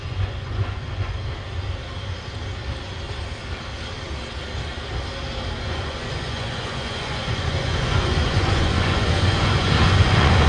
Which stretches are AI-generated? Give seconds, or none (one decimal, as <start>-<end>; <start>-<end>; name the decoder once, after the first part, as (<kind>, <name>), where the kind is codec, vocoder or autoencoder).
0.0-1.2 (vocoder, Vocos); 5.6-10.5